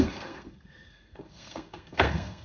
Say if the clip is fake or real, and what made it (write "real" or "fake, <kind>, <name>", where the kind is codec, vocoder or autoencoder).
fake, codec, SNAC